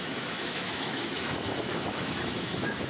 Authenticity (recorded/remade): remade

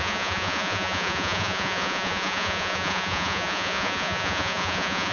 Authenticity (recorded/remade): remade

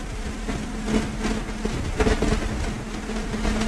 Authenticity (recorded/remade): recorded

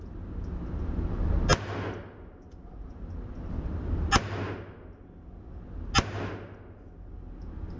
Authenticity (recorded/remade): recorded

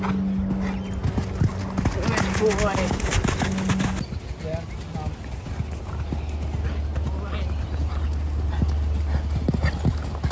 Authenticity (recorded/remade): recorded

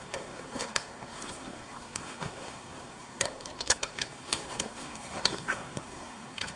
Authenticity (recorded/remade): remade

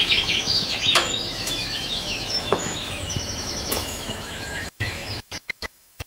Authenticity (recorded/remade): remade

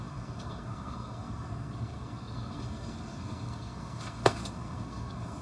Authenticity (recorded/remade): remade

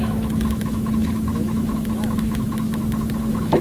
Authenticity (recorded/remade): remade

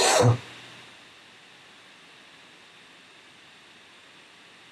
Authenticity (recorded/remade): recorded